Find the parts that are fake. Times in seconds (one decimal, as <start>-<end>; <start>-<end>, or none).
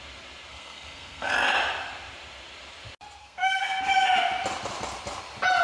0.5-1.3; 3.2-3.8